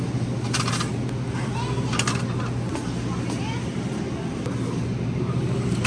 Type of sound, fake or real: real